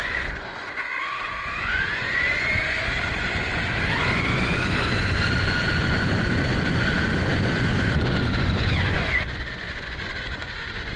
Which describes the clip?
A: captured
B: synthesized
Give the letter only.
B